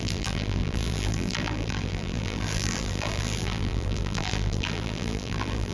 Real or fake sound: fake